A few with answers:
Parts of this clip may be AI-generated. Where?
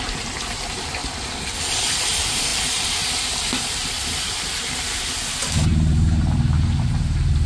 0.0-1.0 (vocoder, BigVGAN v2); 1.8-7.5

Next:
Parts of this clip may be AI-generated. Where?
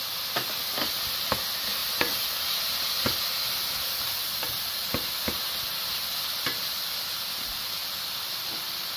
4.3-5.1 (vocoder, BigVGAN v2); 7.8-9.0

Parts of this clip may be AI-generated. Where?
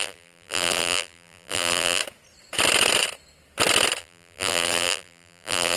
0.0-2.0 (vocoder, BigVGAN v2); 4.0-5.8